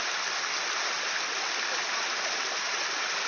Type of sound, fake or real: real